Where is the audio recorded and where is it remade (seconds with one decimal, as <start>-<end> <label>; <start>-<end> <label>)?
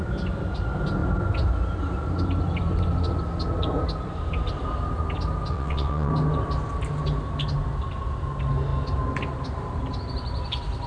0.0-5.5 recorded; 5.5-6.1 remade; 6.1-10.9 recorded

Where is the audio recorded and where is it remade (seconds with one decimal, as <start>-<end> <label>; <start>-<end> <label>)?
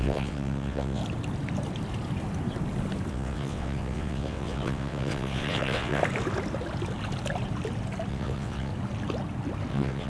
0.0-1.0 remade; 1.0-3.1 recorded; 3.1-6.0 remade; 6.0-8.1 recorded; 8.1-8.7 remade; 8.7-9.7 recorded; 9.7-10.1 remade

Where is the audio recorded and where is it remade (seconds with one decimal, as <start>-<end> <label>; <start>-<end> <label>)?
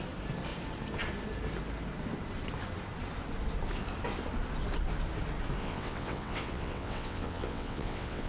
0.0-5.6 recorded; 5.6-8.3 remade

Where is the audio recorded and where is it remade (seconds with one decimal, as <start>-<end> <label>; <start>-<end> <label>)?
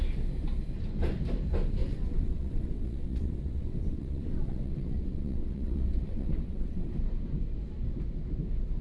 0.0-1.8 recorded; 1.8-7.0 remade; 7.0-8.8 recorded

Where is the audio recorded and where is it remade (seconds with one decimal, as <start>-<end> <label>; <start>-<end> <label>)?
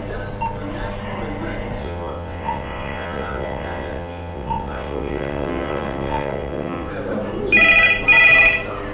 0.0-1.8 recorded; 1.8-6.9 remade; 6.9-8.9 recorded